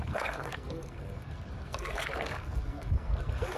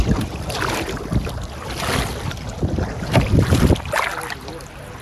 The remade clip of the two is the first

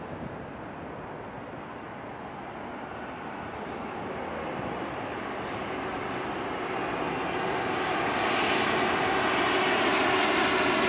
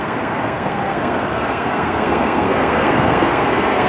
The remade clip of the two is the second